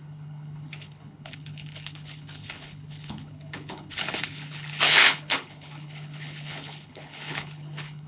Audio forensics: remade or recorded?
remade